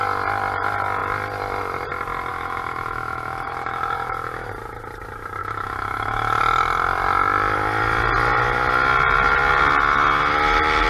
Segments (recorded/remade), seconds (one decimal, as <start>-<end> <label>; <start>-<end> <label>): 0.0-2.3 recorded; 2.3-4.5 remade; 4.5-5.4 recorded; 5.4-6.4 remade; 6.4-10.9 recorded